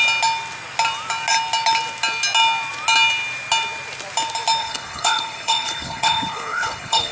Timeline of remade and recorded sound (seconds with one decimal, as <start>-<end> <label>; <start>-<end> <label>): 0.0-4.6 recorded; 4.6-7.1 remade